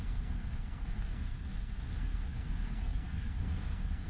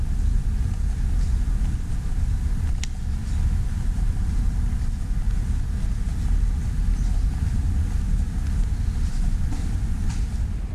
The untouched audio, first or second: second